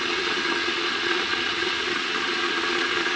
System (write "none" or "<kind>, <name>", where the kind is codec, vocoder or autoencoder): vocoder, Vocos